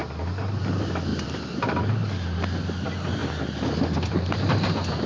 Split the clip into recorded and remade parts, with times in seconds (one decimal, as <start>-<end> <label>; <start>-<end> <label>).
0.0-0.6 recorded; 0.6-3.2 remade; 3.2-3.8 recorded; 3.8-5.1 remade